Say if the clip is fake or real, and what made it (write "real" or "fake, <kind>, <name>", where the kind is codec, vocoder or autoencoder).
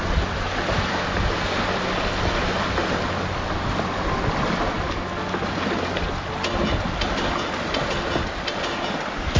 real